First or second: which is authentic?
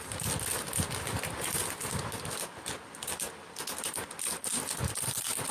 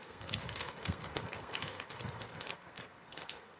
first